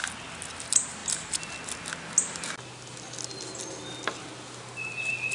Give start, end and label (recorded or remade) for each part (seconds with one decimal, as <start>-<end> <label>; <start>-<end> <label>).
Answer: 0.0-5.3 recorded